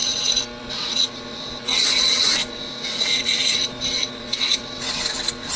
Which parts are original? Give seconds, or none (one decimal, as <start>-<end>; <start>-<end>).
0.0-0.6